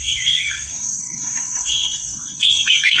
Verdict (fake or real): fake